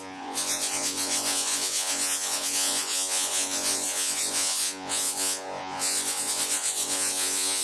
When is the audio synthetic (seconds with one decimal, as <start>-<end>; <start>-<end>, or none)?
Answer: 0.0-7.6